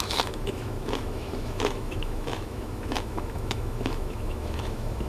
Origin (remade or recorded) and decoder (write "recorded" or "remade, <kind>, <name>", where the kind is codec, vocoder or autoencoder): remade, autoencoder, DAC-VAE